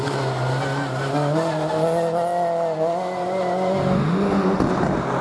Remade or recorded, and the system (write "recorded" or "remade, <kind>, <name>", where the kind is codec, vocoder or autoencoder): recorded